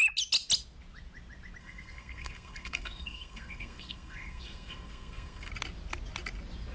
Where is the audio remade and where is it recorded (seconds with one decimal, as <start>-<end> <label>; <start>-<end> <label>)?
0.0-1.6 recorded; 1.6-5.5 remade; 5.5-6.7 recorded